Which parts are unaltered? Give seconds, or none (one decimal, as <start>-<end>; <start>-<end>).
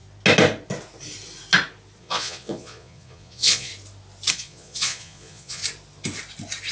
0.0-2.0; 3.7-4.3; 5.6-6.7